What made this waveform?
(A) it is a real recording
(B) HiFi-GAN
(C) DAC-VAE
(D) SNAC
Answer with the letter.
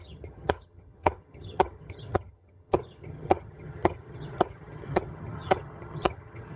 B